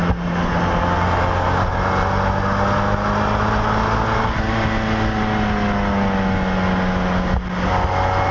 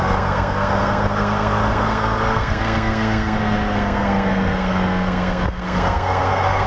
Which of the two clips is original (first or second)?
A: first